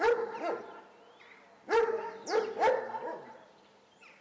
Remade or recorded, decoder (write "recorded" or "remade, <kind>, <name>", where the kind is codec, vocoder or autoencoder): recorded